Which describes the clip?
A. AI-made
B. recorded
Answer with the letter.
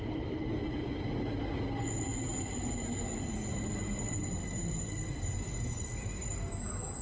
B